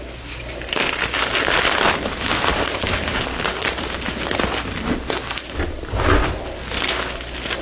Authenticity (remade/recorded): recorded